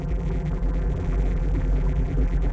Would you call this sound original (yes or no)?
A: no